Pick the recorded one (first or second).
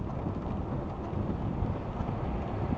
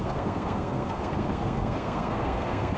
first